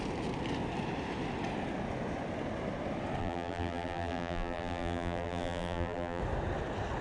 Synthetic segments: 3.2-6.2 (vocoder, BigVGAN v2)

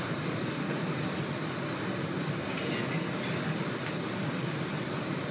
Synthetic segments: 0.0-1.4 (vocoder, BigVGAN v2); 4.6-5.3